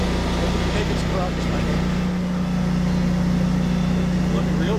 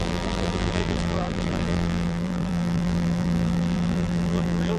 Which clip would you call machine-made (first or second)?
second